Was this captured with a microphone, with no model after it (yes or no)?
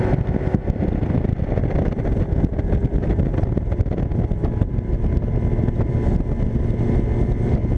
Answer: yes